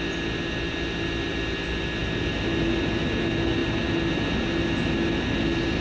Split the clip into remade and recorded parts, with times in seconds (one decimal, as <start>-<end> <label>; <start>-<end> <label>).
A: 0.0-5.8 recorded